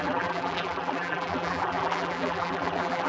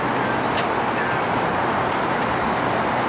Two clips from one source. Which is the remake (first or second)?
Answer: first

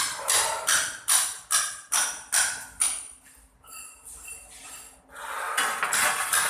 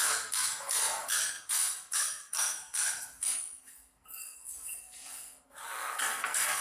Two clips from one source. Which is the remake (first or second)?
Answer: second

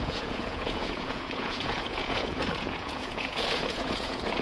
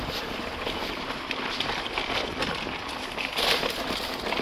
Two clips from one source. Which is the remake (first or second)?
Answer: first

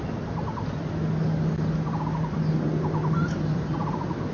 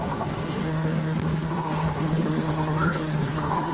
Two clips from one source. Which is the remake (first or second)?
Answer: second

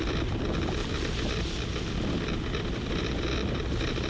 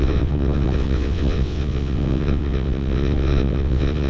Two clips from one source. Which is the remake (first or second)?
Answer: second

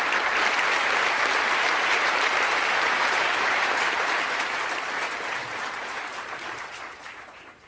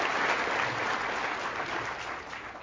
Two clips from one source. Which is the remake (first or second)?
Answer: first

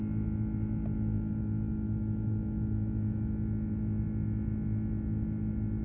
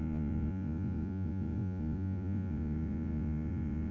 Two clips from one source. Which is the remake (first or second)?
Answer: second